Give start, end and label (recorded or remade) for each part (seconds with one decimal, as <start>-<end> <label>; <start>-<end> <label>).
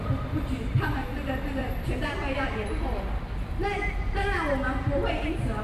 0.0-1.6 recorded; 1.6-2.7 remade; 2.7-5.6 recorded